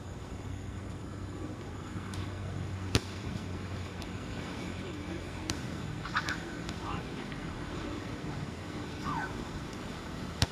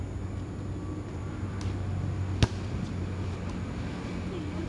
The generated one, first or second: first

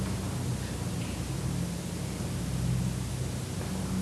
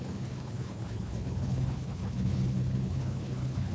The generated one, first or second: second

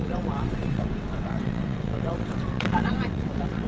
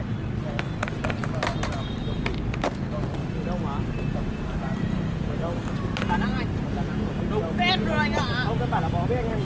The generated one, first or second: first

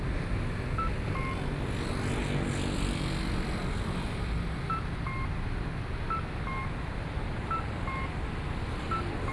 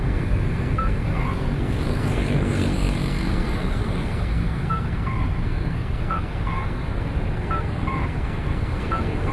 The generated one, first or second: second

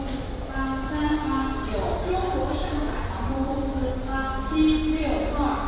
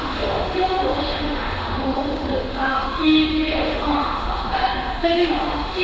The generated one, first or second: second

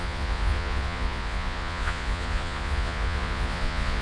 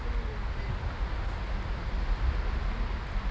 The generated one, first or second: first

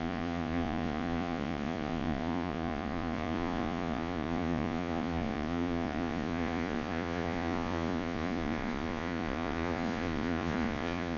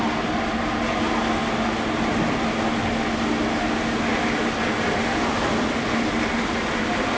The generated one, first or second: first